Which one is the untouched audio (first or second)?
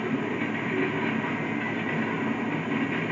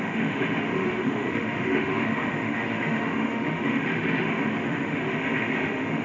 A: first